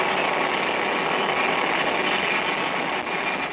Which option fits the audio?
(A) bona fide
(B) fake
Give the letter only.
A